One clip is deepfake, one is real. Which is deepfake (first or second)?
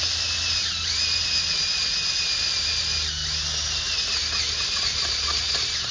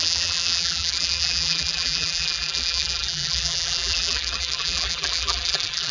second